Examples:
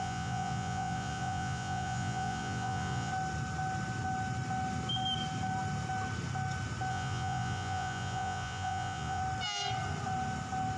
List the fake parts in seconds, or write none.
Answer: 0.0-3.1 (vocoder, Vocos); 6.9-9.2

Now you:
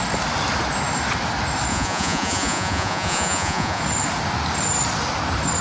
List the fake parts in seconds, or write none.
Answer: 1.7-3.8 (vocoder, Vocos)